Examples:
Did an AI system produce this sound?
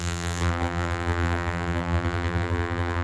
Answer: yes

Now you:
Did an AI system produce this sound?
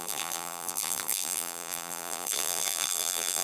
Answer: yes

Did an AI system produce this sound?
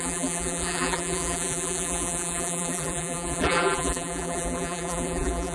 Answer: yes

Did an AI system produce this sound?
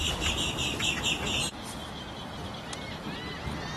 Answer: no